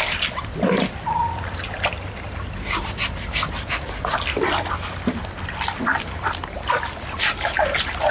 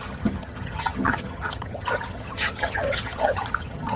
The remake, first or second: second